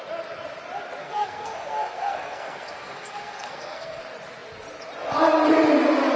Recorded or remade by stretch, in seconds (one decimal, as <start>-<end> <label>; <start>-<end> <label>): 0.0-1.0 recorded; 1.0-4.0 remade; 4.0-6.2 recorded